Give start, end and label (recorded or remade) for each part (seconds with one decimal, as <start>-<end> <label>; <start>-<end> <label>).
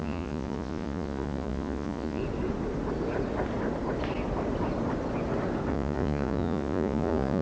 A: 0.0-2.2 remade; 2.2-5.7 recorded; 5.7-7.4 remade